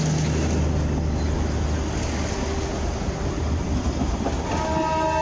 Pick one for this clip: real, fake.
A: real